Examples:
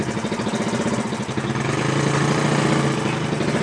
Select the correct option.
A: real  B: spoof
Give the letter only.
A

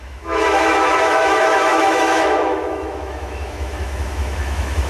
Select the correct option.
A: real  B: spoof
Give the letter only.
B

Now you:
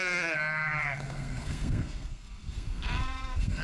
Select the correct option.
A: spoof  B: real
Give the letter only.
A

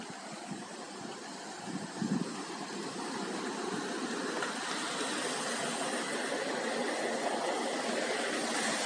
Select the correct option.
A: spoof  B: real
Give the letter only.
B